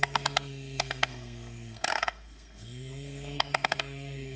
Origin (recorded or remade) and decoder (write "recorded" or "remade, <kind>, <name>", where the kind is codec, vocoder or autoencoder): remade, codec, SNAC